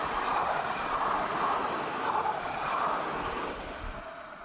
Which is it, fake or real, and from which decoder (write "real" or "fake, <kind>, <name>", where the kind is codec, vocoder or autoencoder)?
real